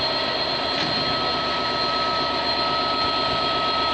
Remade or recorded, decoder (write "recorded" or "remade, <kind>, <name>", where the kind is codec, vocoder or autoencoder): recorded